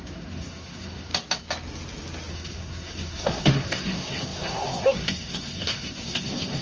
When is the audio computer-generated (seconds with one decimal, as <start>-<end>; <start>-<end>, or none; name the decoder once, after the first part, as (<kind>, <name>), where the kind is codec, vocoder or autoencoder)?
0.0-1.1 (codec, SNAC); 2.3-6.6